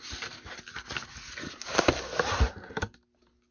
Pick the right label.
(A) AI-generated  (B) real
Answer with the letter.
B